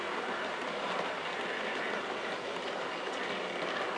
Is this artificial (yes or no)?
no